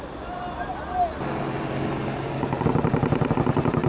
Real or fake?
real